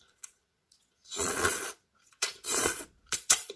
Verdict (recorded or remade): remade